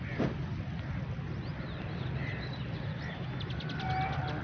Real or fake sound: real